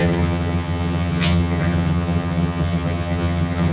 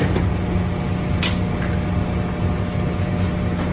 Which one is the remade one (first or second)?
first